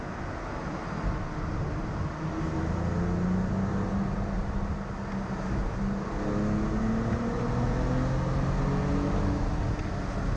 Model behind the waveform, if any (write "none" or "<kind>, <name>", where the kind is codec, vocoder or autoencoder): none